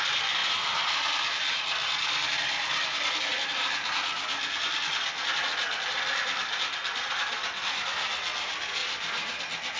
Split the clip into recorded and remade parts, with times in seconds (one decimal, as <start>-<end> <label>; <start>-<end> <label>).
0.0-9.8 recorded